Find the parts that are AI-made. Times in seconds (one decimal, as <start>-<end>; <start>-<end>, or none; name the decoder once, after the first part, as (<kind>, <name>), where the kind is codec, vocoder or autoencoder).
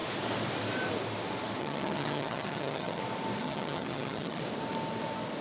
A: 1.6-3.0 (vocoder, HiFi-GAN); 3.4-4.4